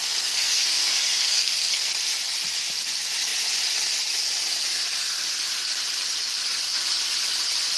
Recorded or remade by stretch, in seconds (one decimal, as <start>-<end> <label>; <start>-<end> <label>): 0.0-1.9 remade; 1.9-7.8 recorded

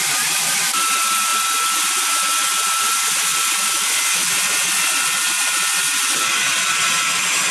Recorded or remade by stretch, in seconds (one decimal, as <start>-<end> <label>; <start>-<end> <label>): 0.0-1.3 remade; 1.3-1.8 recorded; 1.8-7.5 remade

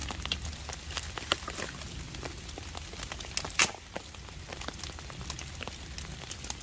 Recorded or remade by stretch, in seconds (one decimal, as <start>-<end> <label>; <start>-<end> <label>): 0.0-6.6 recorded

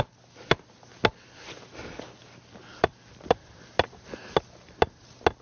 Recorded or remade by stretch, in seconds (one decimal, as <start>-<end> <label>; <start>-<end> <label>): 0.0-5.4 recorded

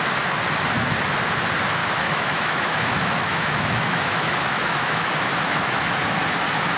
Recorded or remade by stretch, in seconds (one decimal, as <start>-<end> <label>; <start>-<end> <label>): 0.0-1.8 recorded; 1.8-5.9 remade; 5.9-6.8 recorded

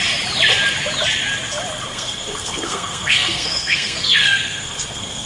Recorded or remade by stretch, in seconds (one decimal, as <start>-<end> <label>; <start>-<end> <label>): 0.0-1.9 recorded; 1.9-5.3 remade

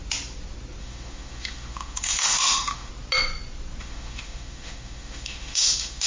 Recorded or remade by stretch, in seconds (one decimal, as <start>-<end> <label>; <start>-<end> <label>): 0.0-0.8 recorded; 0.8-2.9 remade; 2.9-3.8 recorded; 3.8-6.1 remade

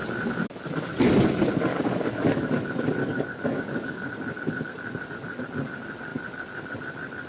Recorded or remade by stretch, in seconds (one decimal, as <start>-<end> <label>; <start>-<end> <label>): 0.0-1.7 recorded; 1.7-2.5 remade; 2.5-3.0 recorded; 3.0-4.1 remade; 4.1-7.3 recorded